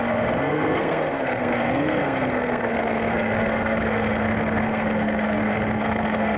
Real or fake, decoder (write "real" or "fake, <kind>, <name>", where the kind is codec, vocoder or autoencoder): fake, codec, SNAC